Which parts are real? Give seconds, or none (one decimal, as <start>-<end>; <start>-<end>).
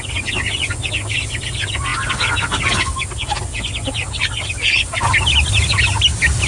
0.0-6.5